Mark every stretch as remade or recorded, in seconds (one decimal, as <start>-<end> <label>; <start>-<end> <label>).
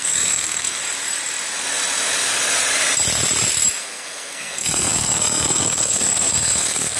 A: 0.0-0.8 remade; 0.8-3.8 recorded; 3.8-7.0 remade